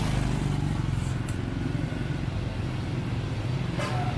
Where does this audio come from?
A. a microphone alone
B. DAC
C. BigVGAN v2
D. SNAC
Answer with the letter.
A